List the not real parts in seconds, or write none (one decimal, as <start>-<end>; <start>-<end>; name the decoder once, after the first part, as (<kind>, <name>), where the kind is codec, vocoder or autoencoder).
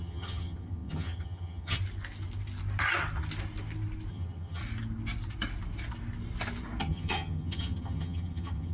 0.0-1.8 (vocoder, HiFi-GAN); 4.1-4.6; 6.8-8.7